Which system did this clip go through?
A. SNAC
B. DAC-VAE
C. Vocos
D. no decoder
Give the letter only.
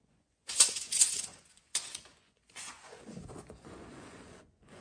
C